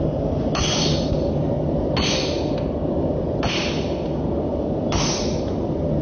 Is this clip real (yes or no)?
yes